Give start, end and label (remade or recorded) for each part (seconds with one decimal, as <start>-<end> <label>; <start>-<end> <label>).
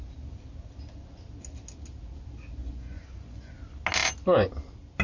0.0-2.6 recorded; 2.6-3.5 remade; 3.5-5.0 recorded